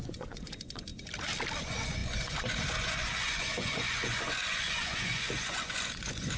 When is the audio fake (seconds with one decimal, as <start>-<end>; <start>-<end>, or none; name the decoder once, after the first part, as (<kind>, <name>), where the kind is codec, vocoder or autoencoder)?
0.0-0.9 (vocoder, Vocos); 1.6-6.4